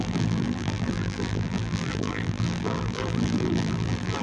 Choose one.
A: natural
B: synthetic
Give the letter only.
B